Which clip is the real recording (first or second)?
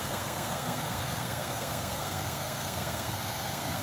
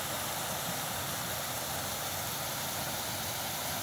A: second